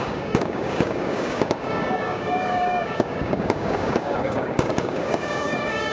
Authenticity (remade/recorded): remade